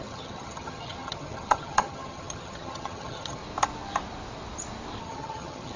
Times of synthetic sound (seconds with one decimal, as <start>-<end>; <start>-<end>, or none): 0.0-3.4; 5.0-5.8